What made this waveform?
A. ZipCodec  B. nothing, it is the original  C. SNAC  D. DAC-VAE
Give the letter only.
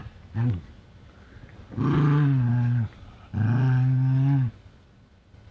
B